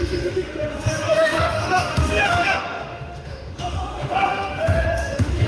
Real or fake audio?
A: fake